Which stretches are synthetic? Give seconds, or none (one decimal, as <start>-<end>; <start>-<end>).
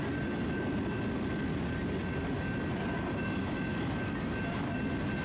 none